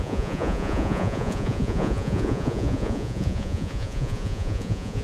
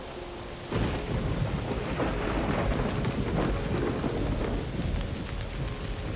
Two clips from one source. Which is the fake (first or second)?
first